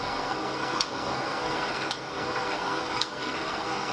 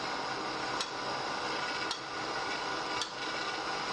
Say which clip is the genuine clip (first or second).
second